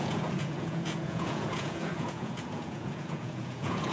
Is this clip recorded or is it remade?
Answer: remade